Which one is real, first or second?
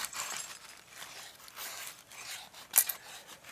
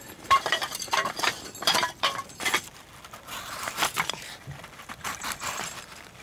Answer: first